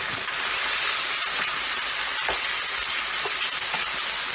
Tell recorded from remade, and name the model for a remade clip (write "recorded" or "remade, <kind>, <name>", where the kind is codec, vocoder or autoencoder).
recorded